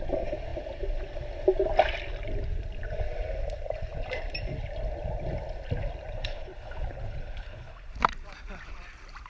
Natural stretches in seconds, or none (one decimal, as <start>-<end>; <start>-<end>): 0.0-6.2; 7.9-9.3